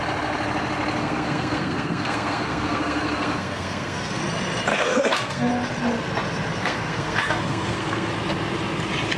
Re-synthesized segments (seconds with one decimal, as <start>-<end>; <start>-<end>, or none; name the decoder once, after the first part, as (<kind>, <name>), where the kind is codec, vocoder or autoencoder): 1.0-4.2 (codec, SNAC); 4.7-5.5; 6.6-8.1